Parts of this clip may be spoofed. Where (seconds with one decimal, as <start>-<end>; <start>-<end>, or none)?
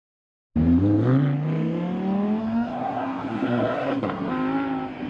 2.4-4.3